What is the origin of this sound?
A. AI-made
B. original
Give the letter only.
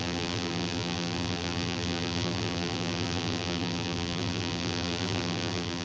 A